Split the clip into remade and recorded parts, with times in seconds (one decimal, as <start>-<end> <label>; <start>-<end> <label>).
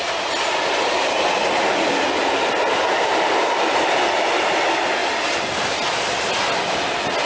0.0-7.3 recorded